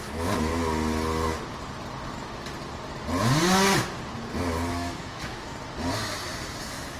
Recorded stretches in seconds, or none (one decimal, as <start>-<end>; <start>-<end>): 0.5-4.7; 5.5-6.6